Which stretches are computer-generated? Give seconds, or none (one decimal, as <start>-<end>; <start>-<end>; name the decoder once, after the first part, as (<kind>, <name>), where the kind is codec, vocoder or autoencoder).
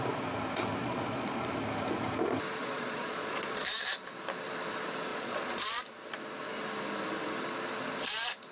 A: 0.8-1.5 (vocoder, Vocos); 2.6-3.6; 5.1-5.8